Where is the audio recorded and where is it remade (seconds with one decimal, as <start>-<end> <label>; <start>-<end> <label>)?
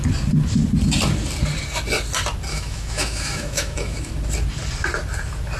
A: 0.0-2.5 recorded; 2.5-4.1 remade; 4.1-5.6 recorded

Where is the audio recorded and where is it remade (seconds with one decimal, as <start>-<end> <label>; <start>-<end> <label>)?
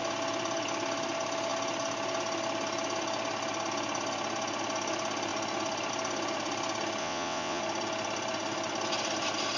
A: 0.0-7.0 recorded; 7.0-7.6 remade; 7.6-9.6 recorded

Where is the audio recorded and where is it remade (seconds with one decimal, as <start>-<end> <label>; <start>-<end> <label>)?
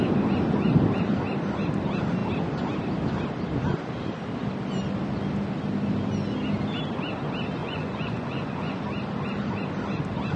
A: 0.0-7.6 recorded; 7.6-8.8 remade; 8.8-10.4 recorded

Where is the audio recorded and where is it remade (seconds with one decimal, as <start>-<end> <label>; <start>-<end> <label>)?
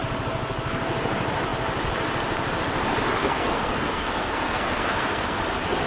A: 0.0-3.2 recorded; 3.2-5.4 remade; 5.4-5.9 recorded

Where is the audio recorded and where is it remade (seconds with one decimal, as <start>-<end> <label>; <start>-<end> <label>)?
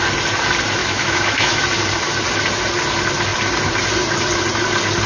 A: 0.0-0.8 recorded; 0.8-1.6 remade; 1.6-5.1 recorded